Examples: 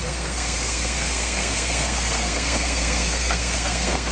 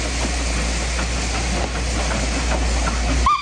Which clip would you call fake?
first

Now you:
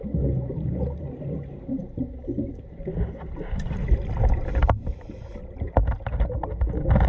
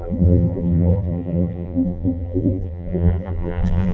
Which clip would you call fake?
second